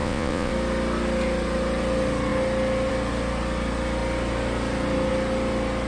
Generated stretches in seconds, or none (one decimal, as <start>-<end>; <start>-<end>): 0.0-0.5